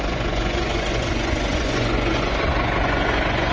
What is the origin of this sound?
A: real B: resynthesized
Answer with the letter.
B